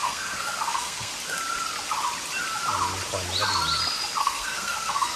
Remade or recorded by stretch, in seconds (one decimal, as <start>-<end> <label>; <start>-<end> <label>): 0.0-1.1 remade; 1.1-4.2 recorded; 4.2-5.2 remade